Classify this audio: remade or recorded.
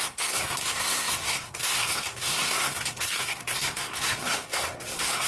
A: remade